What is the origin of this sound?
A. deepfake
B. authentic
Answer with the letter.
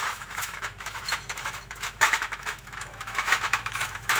A